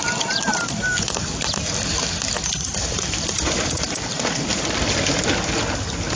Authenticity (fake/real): real